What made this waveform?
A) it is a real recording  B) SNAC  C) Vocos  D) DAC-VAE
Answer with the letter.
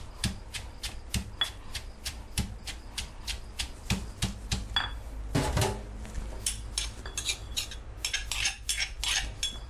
A